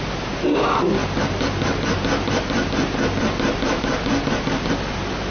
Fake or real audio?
real